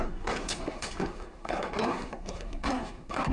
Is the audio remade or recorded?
remade